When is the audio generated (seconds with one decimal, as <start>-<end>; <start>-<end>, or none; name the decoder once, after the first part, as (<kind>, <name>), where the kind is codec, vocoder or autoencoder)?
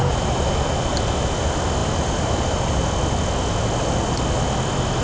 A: none